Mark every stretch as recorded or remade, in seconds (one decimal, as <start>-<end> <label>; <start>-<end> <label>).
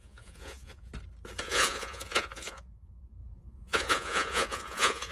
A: 0.0-0.9 remade; 0.9-1.4 recorded; 1.4-5.1 remade